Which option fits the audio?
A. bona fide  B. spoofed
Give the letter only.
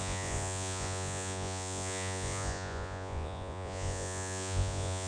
B